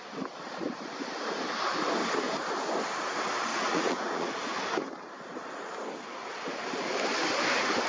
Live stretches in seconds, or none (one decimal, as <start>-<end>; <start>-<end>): 0.0-3.5; 4.3-7.9